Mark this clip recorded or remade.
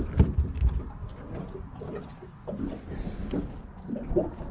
recorded